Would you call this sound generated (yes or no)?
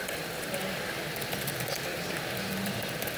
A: yes